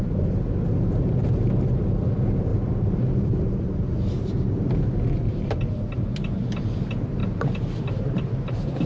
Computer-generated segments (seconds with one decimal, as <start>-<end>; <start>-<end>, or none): 2.5-4.6; 7.2-7.8